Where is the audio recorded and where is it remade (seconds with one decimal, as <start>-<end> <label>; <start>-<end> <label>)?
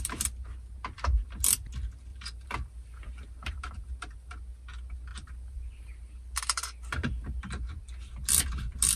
0.0-2.1 recorded; 2.1-4.3 remade; 4.3-5.1 recorded; 5.1-7.4 remade; 7.4-9.0 recorded